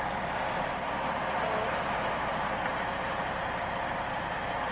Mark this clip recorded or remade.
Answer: recorded